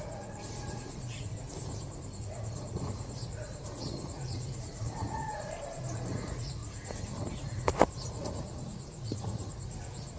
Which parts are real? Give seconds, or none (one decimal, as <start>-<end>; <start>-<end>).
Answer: 1.3-2.2; 6.6-7.2